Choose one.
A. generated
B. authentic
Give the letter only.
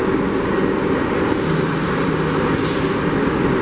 B